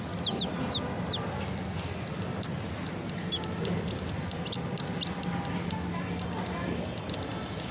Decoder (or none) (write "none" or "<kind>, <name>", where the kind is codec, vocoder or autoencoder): none